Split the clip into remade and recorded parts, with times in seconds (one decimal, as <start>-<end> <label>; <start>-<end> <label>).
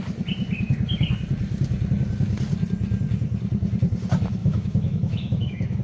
0.0-4.4 recorded; 4.4-5.8 remade